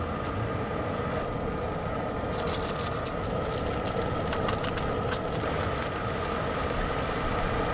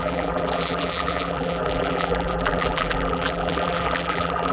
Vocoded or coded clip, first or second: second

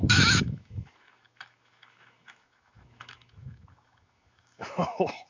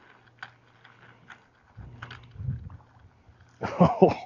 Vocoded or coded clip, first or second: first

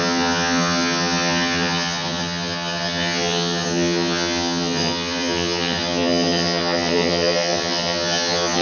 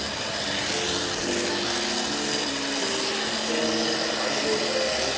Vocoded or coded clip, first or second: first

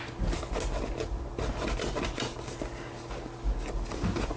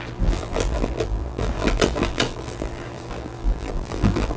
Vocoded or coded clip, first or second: second